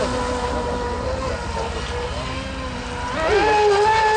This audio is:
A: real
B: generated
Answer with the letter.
A